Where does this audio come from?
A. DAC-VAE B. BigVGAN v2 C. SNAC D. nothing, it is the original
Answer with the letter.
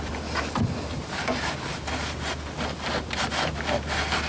D